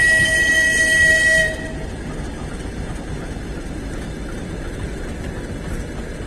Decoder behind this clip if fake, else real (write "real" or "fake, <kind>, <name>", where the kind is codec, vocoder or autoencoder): real